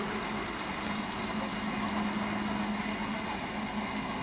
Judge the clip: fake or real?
real